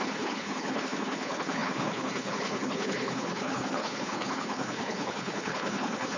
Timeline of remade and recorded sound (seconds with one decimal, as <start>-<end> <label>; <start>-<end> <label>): 0.0-6.2 remade